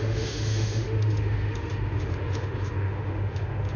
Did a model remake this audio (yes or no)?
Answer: yes